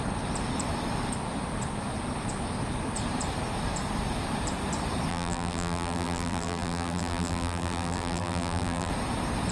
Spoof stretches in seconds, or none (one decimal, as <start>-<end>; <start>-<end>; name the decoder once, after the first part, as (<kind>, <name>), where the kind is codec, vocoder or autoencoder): 5.1-8.9 (vocoder, BigVGAN v2)